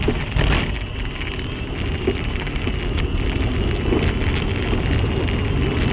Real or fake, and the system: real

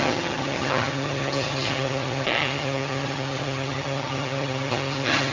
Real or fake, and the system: fake, vocoder, HiFi-GAN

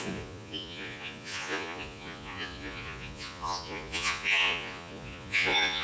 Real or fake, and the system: fake, vocoder, Vocos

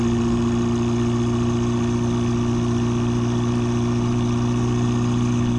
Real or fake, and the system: real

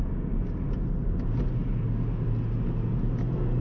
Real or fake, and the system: real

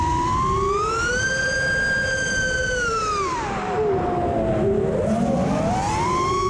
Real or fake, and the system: real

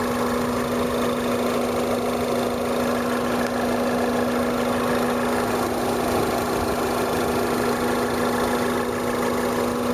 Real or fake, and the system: real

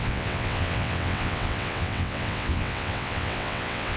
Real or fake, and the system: fake, vocoder, WaveNeXt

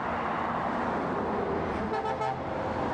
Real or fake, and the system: real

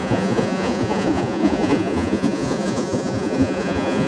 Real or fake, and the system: fake, vocoder, Vocos